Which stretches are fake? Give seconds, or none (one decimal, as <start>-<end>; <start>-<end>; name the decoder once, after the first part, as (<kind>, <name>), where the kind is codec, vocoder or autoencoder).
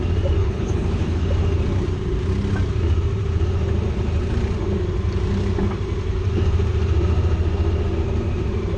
0.4-1.3 (codec, HILCodec)